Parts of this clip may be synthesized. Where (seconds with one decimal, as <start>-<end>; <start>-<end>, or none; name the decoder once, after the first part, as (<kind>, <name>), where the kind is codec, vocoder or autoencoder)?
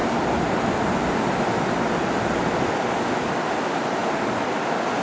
none